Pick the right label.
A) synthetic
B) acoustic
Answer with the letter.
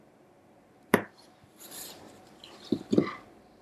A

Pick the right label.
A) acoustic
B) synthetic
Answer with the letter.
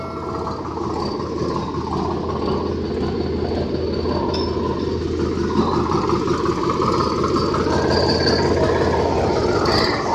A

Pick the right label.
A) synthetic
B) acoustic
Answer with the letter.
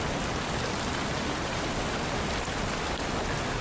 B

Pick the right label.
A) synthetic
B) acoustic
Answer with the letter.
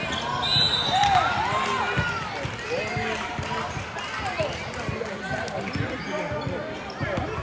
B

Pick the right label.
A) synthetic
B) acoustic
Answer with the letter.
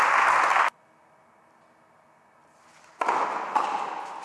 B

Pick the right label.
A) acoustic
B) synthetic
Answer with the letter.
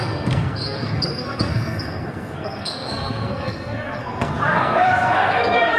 B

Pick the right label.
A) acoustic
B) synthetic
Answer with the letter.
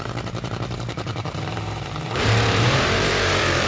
B